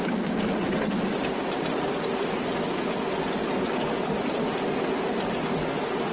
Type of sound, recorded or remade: recorded